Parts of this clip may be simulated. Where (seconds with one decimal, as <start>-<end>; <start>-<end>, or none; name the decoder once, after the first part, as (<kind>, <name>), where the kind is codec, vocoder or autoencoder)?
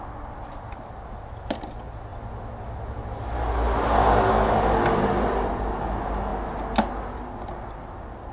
none